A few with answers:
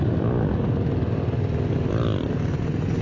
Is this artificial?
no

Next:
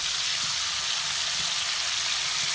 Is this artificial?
no